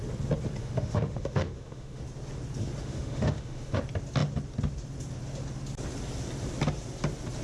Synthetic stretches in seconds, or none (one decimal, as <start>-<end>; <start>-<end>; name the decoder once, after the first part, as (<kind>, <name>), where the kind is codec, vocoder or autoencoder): 0.6-2.0 (autoencoder, DAC-VAE); 2.8-3.8